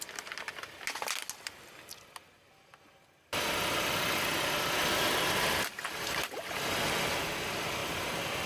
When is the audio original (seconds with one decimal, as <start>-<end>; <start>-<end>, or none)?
0.0-8.5